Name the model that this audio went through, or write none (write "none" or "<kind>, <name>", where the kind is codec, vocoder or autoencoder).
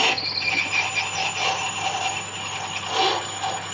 none